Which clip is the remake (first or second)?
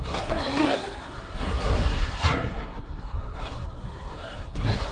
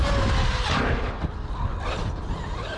first